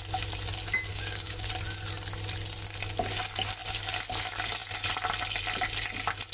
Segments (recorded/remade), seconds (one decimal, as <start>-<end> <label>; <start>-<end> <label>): 0.0-0.9 recorded; 0.9-1.5 remade; 1.5-6.3 recorded